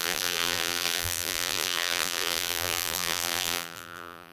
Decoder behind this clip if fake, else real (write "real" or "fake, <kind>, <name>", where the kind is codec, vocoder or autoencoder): fake, vocoder, BigVGAN v2